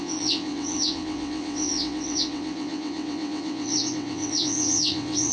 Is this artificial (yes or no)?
yes